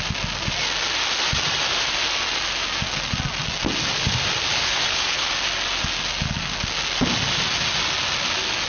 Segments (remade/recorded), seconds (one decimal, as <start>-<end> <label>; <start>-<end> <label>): 0.0-4.5 recorded; 4.5-5.3 remade; 5.3-8.7 recorded